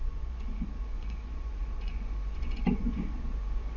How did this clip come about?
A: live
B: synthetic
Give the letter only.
B